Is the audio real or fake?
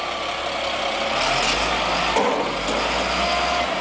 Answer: real